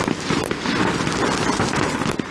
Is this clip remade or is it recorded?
recorded